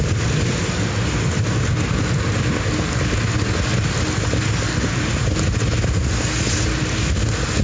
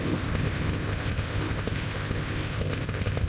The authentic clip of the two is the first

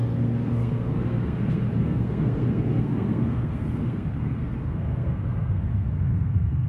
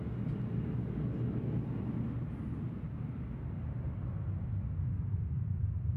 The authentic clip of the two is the second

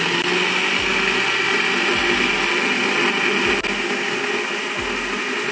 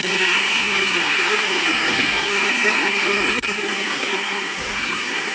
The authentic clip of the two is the first